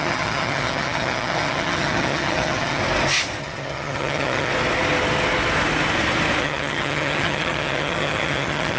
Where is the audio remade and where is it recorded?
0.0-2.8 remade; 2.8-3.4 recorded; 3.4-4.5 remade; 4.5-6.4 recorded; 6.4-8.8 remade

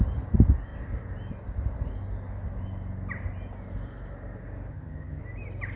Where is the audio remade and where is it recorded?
0.0-4.7 recorded; 4.7-5.2 remade; 5.2-5.8 recorded